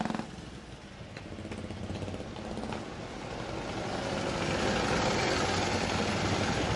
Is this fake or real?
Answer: real